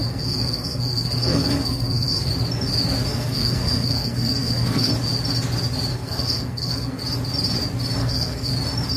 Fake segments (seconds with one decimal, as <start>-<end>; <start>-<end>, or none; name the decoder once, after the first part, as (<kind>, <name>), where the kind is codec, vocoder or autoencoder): 0.0-2.3 (codec, SNAC); 3.1-4.9; 5.9-7.0; 8.0-8.5